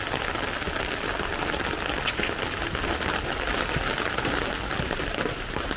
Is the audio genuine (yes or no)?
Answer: yes